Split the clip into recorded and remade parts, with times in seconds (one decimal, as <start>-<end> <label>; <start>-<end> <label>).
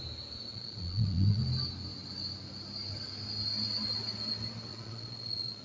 0.0-0.5 recorded; 0.5-1.4 remade; 1.4-4.7 recorded; 4.7-5.6 remade